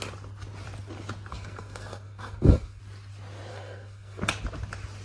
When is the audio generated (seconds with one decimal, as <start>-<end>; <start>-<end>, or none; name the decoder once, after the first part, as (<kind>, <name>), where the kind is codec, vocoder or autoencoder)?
1.3-2.8 (codec, SNAC); 3.5-4.2